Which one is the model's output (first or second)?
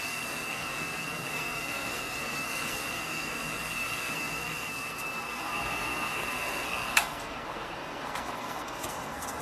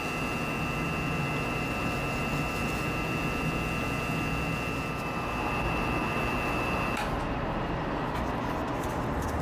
first